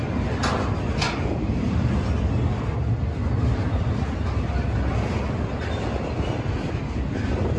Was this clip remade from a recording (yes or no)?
no